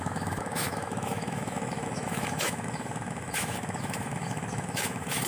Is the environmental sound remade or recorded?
remade